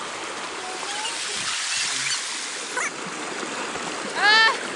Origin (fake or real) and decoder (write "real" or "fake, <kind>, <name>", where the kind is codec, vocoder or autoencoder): real